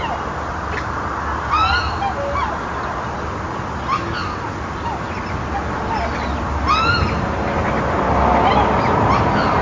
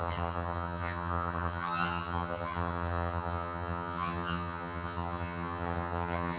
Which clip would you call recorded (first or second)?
first